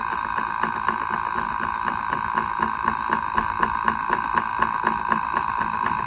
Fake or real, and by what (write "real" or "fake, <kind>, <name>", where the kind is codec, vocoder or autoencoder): real